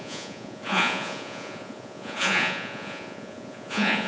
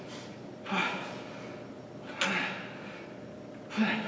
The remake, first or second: first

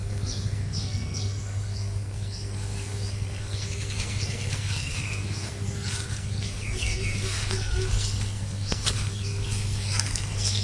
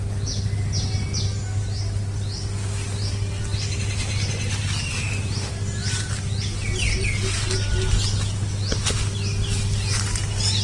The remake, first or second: first